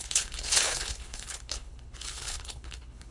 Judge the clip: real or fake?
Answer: fake